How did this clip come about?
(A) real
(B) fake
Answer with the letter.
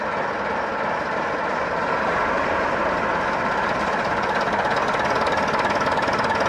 A